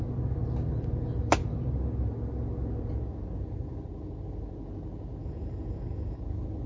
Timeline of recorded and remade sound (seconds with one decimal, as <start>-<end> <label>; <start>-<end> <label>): 0.0-5.2 recorded; 5.2-6.2 remade; 6.2-6.7 recorded